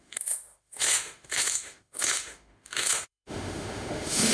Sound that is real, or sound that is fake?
fake